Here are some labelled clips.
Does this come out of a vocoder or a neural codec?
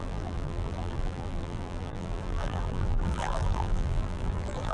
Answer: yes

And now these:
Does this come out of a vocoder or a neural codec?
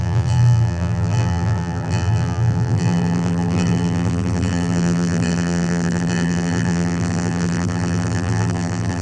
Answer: yes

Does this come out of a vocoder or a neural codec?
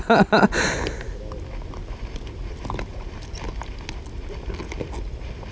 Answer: no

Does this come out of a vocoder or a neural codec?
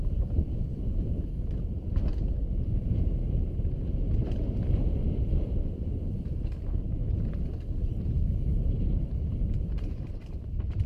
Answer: yes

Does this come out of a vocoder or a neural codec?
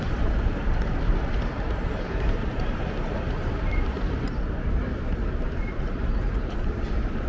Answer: yes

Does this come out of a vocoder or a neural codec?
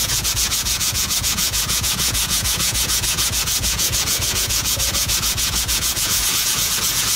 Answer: yes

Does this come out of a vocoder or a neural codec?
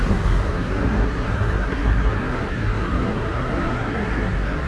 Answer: yes